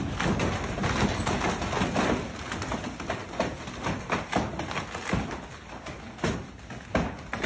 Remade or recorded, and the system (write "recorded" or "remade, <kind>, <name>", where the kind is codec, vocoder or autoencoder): recorded